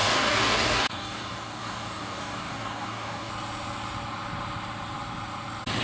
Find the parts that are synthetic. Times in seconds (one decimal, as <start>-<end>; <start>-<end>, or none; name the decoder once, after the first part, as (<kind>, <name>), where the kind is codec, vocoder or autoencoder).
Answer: 0.0-3.3 (codec, DAC)